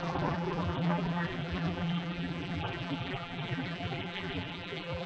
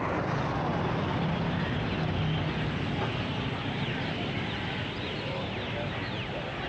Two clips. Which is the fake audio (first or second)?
first